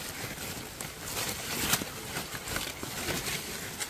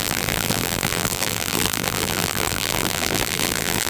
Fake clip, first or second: second